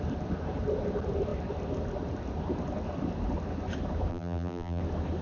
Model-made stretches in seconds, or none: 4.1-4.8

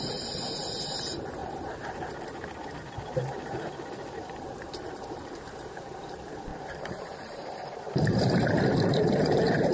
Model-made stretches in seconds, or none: 0.0-1.4; 2.8-6.5; 7.8-9.7

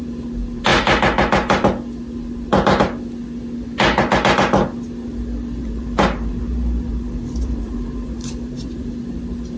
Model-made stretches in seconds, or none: 5.6-6.4; 6.9-8.9

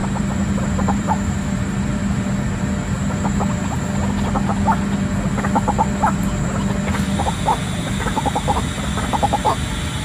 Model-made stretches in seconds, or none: 0.0-2.6

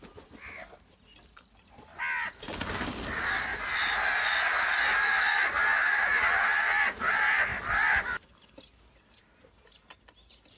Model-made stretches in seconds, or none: none

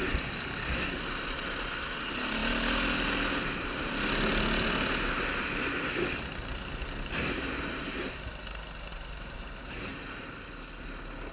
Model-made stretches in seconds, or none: 8.9-10.3